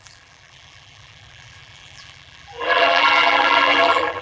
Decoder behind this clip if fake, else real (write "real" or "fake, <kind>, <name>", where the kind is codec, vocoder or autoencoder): fake, vocoder, BigVGAN v2